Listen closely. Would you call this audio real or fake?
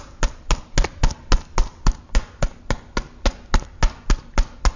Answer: real